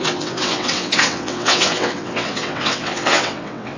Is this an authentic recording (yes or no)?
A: no